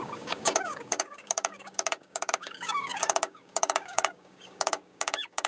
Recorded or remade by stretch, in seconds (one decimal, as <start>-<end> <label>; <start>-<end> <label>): 0.0-5.5 remade